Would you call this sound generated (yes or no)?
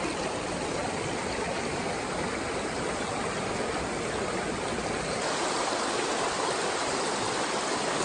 no